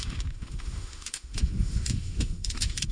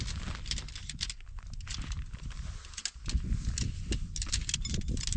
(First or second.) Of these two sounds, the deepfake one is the first